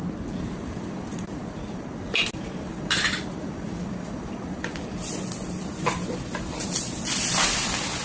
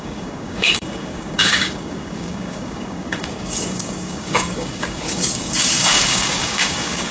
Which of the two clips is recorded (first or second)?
first